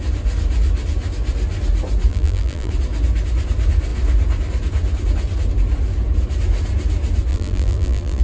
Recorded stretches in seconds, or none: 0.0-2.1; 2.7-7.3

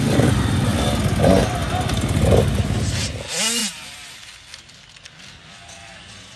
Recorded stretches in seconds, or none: 0.0-6.4

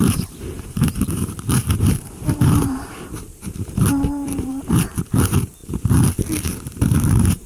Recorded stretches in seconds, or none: 5.6-6.4

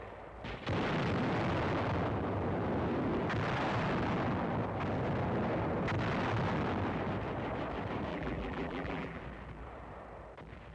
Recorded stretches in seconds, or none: 0.0-8.1; 9.2-10.7